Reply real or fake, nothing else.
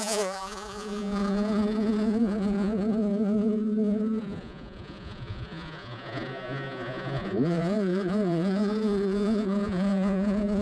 fake